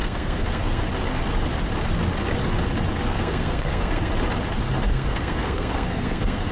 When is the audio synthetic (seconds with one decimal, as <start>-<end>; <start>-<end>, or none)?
0.0-0.8; 3.1-4.1; 4.9-6.5